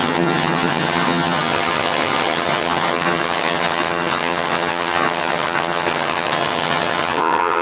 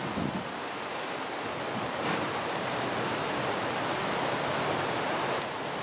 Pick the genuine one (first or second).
second